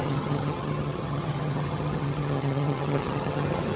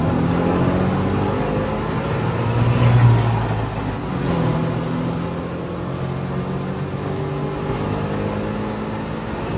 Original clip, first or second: second